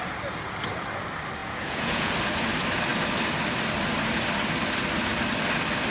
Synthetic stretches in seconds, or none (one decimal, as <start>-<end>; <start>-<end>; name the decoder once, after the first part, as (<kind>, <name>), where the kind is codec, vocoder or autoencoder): 1.4-2.1 (vocoder, Vocos)